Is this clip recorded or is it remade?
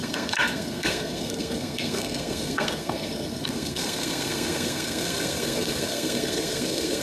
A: remade